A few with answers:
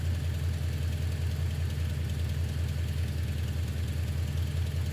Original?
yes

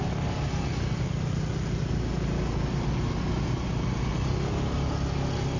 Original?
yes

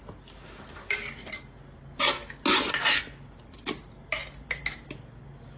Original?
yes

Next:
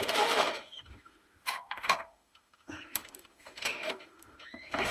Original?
no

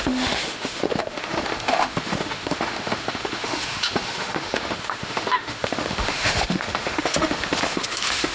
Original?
no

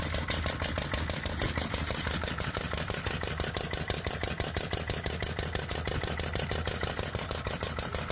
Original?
yes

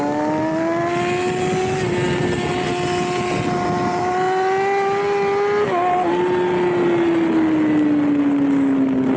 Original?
yes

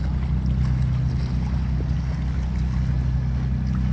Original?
yes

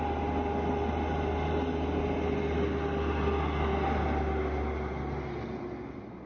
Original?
yes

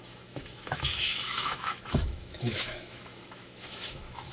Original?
no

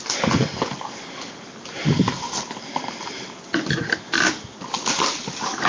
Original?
yes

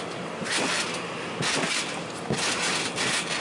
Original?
yes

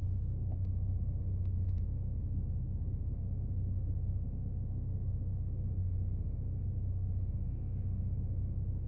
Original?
no